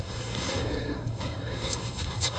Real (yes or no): no